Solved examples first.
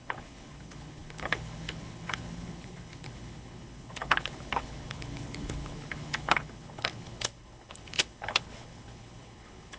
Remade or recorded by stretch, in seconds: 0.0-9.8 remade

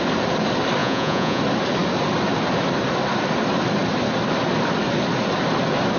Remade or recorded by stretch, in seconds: 0.0-0.8 recorded; 0.8-1.4 remade; 1.4-6.0 recorded